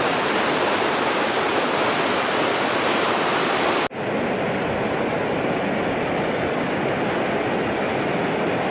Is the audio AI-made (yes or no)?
no